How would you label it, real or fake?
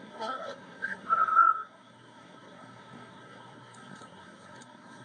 fake